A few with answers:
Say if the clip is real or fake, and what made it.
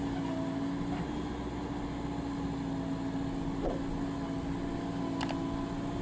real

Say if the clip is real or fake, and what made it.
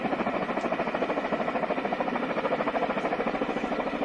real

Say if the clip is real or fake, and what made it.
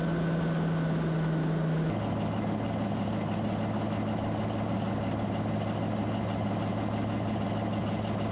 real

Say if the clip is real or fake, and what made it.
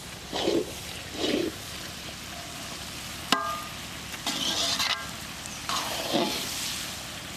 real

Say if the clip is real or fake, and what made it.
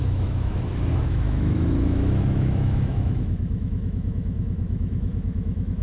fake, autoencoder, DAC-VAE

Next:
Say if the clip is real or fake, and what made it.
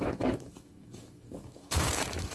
fake, autoencoder, DAC-VAE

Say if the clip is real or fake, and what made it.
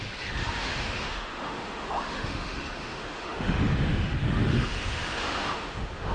fake, autoencoder, DAC-VAE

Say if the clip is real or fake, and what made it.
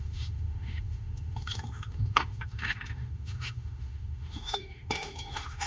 fake, autoencoder, DAC-VAE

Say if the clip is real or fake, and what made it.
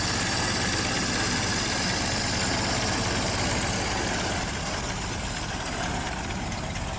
real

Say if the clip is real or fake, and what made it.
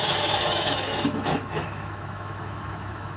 fake, autoencoder, DAC-VAE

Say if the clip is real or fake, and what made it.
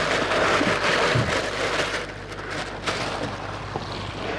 real